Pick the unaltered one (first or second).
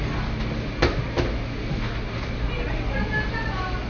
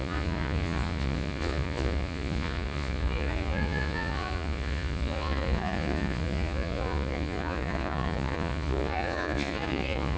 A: first